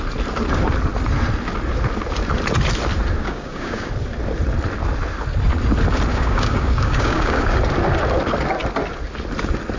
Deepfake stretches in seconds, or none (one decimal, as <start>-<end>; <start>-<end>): 3.2-3.9; 6.1-7.6